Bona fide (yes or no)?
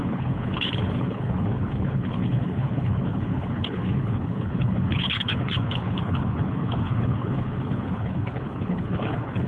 no